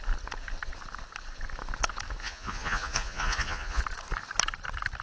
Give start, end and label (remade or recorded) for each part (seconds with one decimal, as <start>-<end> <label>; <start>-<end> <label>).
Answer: 0.0-2.2 recorded; 2.2-3.8 remade; 3.8-5.0 recorded